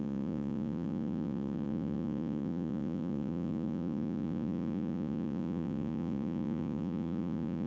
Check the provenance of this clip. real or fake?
fake